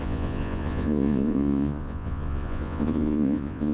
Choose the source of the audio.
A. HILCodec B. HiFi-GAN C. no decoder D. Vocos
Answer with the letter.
D